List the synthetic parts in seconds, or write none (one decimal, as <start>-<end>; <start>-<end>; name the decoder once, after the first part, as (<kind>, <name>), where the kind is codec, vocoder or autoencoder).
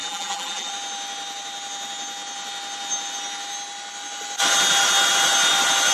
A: 0.0-0.7 (vocoder, BigVGAN v2)